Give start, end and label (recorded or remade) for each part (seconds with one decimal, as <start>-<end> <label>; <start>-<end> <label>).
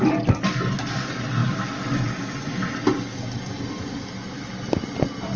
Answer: 0.0-5.4 recorded